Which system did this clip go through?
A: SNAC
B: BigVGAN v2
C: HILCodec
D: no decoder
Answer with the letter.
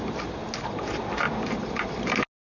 D